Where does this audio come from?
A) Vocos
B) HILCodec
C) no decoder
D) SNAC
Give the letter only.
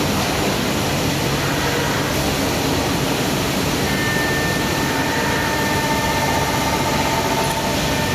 C